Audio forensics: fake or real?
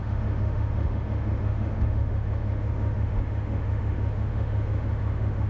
fake